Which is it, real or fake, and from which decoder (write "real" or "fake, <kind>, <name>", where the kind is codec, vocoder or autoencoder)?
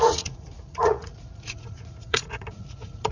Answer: fake, vocoder, Vocos